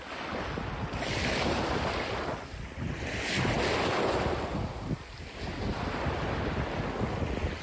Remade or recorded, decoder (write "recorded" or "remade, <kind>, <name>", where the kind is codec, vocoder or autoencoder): recorded